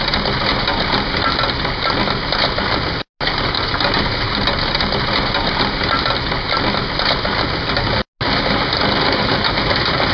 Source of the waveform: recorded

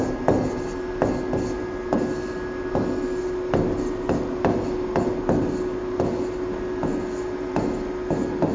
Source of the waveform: recorded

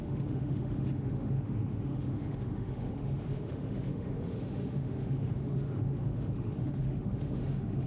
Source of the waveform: remade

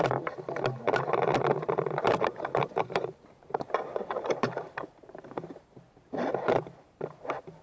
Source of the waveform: remade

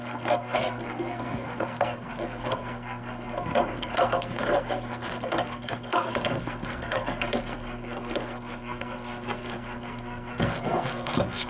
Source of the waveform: remade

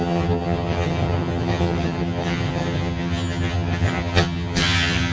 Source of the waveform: remade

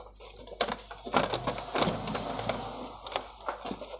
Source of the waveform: recorded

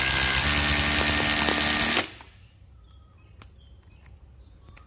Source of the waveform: recorded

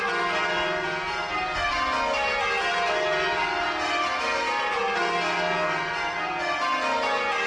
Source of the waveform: recorded